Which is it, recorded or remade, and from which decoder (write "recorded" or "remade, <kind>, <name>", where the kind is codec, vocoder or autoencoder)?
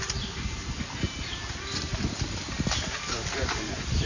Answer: recorded